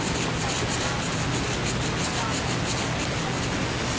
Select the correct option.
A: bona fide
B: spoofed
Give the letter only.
A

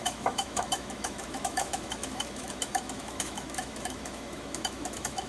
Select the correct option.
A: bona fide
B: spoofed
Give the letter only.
B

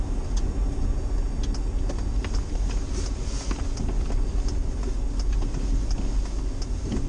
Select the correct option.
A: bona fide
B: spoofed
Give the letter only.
A